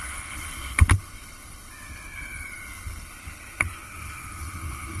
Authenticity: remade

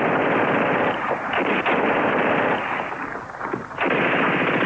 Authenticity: recorded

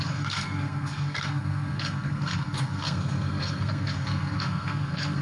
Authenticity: remade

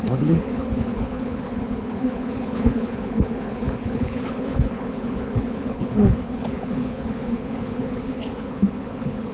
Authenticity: remade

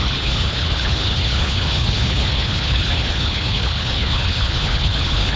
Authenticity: remade